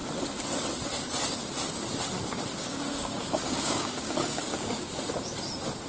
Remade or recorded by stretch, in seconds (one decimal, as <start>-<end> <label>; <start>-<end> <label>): 0.0-2.5 recorded; 2.5-5.0 remade; 5.0-5.9 recorded